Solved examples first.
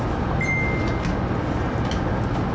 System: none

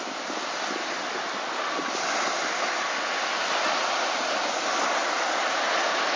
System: none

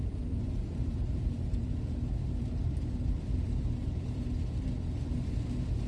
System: vocoder, BigVGAN v2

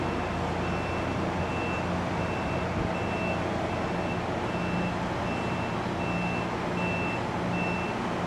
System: none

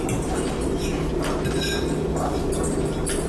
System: none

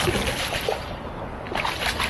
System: none